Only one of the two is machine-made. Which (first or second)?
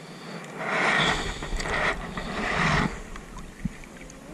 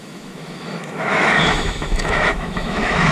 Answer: second